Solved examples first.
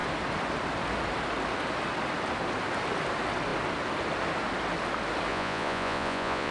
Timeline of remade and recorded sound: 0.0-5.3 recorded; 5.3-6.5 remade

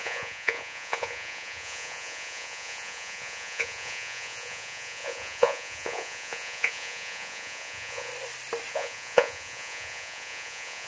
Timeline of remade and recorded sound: 0.0-8.1 remade; 8.1-8.7 recorded; 8.7-10.9 remade

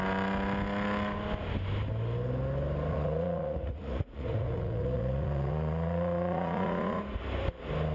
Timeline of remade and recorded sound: 0.0-2.9 recorded; 2.9-7.0 remade; 7.0-7.9 recorded

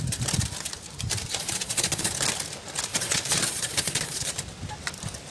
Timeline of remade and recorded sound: 0.0-1.3 recorded; 1.3-2.1 remade; 2.1-2.9 recorded; 2.9-4.3 remade; 4.3-5.3 recorded

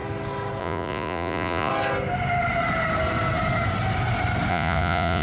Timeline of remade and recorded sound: 0.0-0.6 recorded; 0.6-1.7 remade; 1.7-4.5 recorded; 4.5-5.2 remade

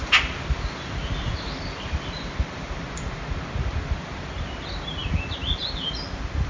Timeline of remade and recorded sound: 0.0-6.5 recorded